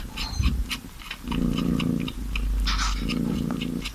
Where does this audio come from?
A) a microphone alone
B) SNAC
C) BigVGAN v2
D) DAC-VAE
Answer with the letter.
A